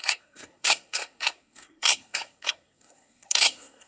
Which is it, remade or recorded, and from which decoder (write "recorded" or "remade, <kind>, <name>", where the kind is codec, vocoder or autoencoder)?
remade, codec, SNAC